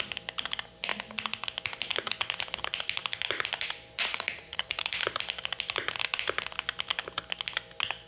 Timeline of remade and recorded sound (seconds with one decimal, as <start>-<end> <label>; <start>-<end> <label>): 0.0-4.1 recorded; 4.1-4.9 remade; 4.9-8.1 recorded